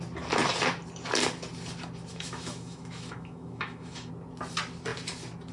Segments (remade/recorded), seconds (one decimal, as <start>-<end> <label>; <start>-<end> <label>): 0.0-2.1 recorded; 2.1-4.1 remade; 4.1-5.5 recorded